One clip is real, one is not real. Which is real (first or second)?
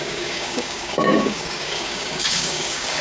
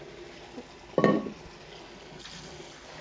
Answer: second